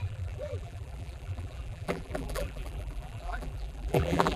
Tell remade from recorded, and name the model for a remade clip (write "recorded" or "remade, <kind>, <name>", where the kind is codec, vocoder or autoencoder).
remade, vocoder, BigVGAN v2